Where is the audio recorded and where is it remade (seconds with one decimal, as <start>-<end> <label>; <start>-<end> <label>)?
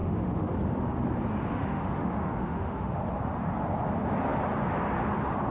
0.0-0.5 remade; 0.5-1.5 recorded; 1.5-3.0 remade; 3.0-5.5 recorded